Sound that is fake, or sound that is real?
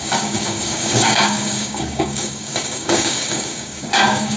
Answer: fake